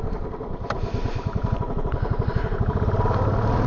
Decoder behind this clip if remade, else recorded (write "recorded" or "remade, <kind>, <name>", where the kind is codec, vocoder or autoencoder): remade, vocoder, BigVGAN v2